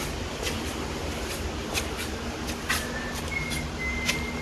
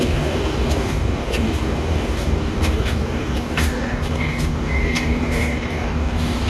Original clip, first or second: first